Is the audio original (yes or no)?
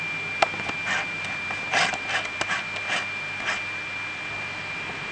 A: yes